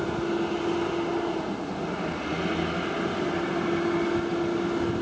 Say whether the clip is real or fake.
real